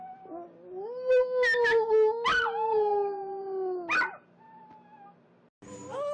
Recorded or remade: recorded